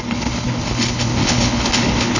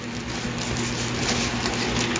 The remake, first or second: first